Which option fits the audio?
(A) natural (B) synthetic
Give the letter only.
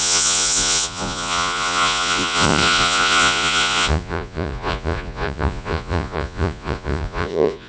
B